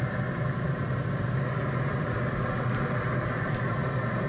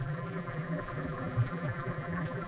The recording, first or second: first